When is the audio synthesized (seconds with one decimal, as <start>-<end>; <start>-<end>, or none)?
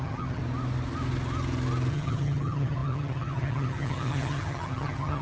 0.0-0.4; 1.9-5.2